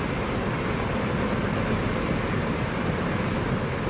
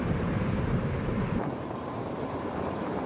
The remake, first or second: second